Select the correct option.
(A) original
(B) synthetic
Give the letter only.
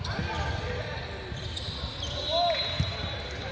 A